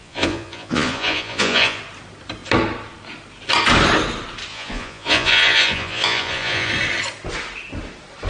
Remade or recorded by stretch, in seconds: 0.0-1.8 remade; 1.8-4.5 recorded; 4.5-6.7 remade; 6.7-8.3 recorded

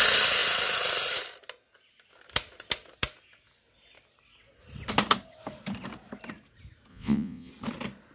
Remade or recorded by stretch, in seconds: 0.0-6.9 recorded; 6.9-7.5 remade; 7.5-8.1 recorded

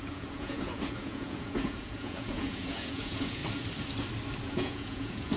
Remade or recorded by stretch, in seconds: 0.0-3.4 remade; 3.4-4.4 recorded; 4.4-5.4 remade

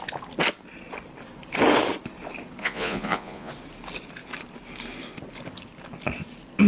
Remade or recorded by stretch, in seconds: 0.0-2.6 recorded; 2.6-3.5 remade; 3.5-6.7 recorded

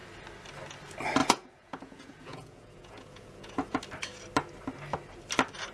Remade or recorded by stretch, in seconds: 0.0-1.2 recorded; 1.2-3.8 remade; 3.8-5.7 recorded